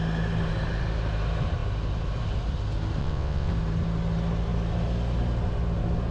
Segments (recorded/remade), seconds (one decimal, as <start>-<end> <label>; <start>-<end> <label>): 0.0-3.0 recorded; 3.0-3.5 remade; 3.5-6.1 recorded